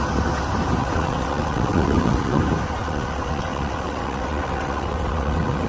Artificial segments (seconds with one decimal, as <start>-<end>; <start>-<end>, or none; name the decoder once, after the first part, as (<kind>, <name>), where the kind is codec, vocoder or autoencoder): 0.8-2.4 (vocoder, WaveNeXt); 2.8-5.7